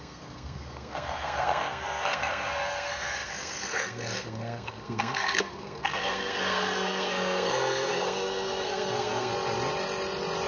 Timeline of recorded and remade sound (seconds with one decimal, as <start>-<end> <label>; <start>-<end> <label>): 0.0-9.3 remade; 9.3-10.5 recorded